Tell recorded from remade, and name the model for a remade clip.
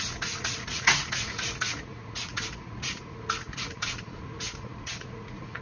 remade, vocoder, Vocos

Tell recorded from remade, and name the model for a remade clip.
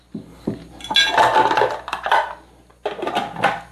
recorded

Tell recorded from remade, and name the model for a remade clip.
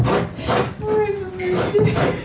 recorded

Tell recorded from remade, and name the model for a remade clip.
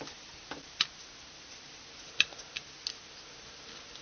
recorded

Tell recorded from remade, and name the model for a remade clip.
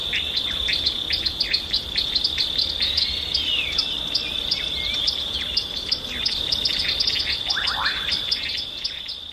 recorded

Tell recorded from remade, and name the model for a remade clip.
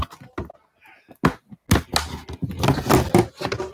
recorded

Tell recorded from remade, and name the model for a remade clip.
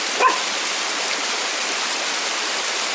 recorded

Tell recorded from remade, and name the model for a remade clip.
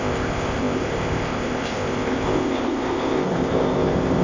remade, codec, ZipCodec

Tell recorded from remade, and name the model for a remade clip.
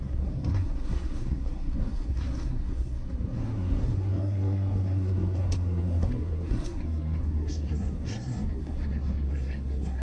remade, codec, SNAC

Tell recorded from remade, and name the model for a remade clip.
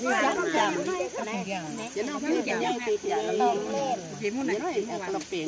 recorded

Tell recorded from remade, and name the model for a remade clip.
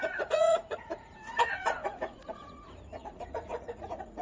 remade, vocoder, Vocos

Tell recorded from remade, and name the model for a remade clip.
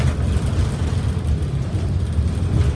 recorded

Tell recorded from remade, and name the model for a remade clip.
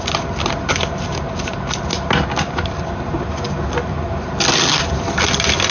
recorded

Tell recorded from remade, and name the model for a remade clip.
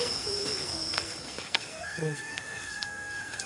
remade, codec, SNAC